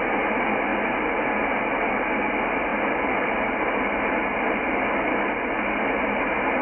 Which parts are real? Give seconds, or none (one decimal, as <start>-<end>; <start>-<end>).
0.0-6.6